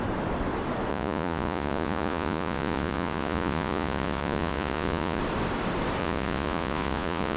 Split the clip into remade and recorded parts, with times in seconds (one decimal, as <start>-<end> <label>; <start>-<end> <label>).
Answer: 0.0-0.9 recorded; 0.9-5.2 remade; 5.2-6.0 recorded; 6.0-7.4 remade